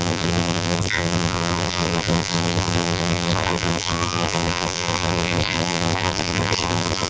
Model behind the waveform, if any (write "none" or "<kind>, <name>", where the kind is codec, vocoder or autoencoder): vocoder, BigVGAN v2